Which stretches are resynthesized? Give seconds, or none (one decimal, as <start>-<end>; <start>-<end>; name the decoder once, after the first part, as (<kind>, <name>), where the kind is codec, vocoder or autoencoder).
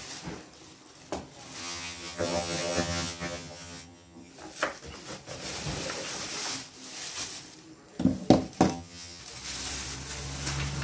1.6-4.3 (vocoder, HiFi-GAN); 8.7-9.2